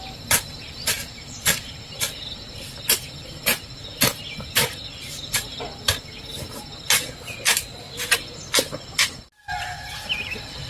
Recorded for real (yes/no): yes